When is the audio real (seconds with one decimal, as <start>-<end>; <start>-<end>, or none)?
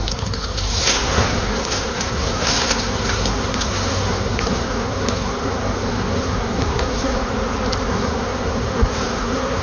7.2-7.9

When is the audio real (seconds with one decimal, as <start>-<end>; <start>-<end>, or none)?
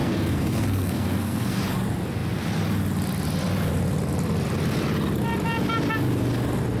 1.6-6.8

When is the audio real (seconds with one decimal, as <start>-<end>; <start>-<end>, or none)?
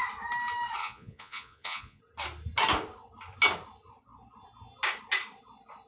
0.0-0.8; 2.0-5.9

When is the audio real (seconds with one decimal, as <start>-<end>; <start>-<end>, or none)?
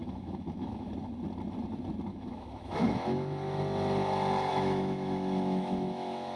0.9-2.1; 3.6-4.5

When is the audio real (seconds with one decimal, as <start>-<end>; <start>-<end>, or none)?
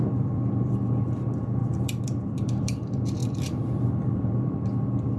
none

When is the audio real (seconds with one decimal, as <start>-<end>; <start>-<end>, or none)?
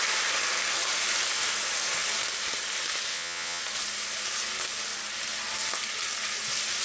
0.0-3.1; 3.6-6.8